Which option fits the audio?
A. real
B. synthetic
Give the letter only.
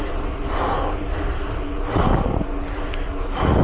A